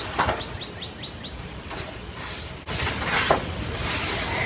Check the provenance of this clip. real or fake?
fake